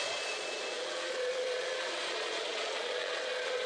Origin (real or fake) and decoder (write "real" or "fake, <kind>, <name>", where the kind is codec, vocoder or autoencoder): fake, vocoder, Vocos